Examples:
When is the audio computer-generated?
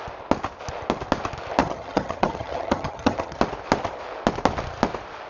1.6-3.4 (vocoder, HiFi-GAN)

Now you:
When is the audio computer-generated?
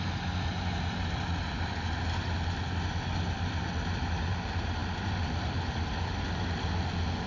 none